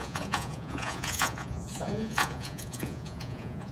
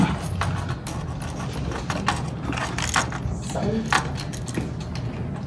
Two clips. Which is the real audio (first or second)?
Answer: second